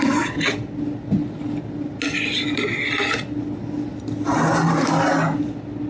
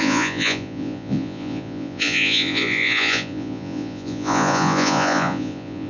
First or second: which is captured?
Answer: first